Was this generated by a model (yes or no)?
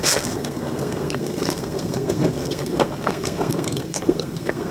yes